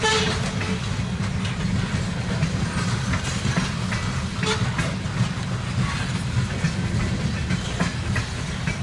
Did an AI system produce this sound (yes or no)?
no